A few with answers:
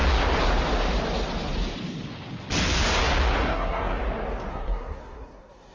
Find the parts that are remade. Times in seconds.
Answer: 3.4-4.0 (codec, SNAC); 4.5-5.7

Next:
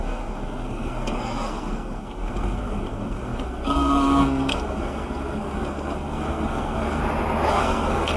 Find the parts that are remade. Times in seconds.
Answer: 0.0-7.0 (codec, SNAC); 7.5-8.2

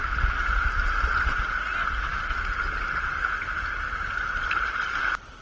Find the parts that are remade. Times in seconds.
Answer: none

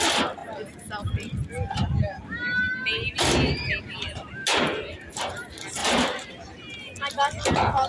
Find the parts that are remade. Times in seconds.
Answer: none